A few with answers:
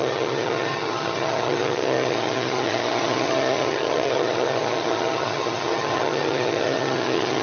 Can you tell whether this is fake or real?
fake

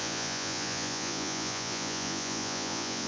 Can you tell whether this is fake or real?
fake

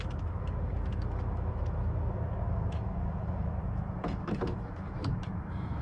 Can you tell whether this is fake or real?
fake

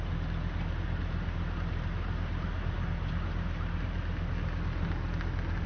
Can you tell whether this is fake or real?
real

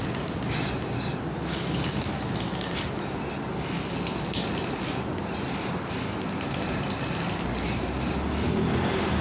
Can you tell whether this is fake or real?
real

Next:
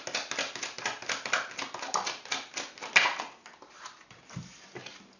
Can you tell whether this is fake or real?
real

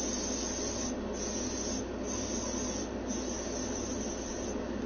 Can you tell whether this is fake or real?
real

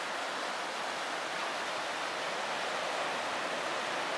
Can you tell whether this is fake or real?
real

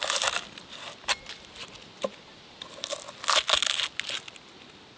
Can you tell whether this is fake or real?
real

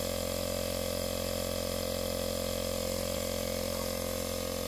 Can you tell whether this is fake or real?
real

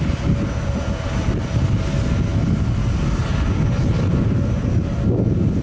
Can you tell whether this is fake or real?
real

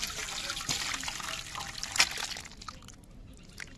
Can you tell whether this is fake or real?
real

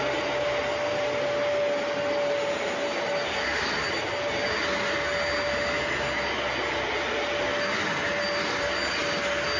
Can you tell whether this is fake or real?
real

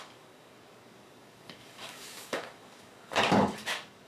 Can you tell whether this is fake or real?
fake